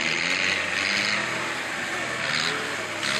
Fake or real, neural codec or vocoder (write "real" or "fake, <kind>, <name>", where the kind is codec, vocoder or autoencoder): real